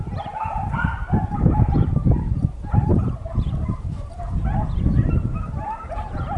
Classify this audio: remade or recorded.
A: remade